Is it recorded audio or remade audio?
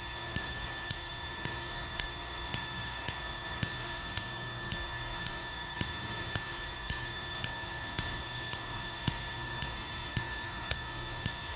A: remade